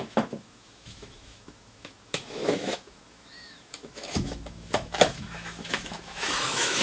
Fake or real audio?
fake